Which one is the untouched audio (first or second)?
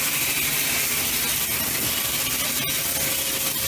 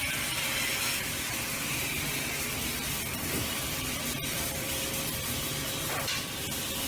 first